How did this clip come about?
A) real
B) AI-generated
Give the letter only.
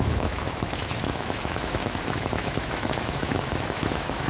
B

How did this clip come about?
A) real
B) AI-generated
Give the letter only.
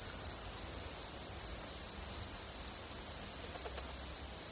A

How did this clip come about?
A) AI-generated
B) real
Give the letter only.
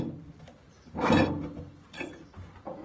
B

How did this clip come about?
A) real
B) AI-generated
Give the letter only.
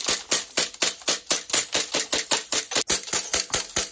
A